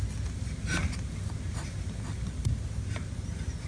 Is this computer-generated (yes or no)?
no